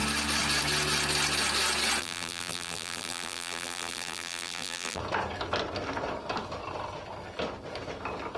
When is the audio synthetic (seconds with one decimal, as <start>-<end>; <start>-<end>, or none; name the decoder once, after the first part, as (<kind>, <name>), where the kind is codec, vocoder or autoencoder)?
2.0-5.0 (vocoder, BigVGAN v2)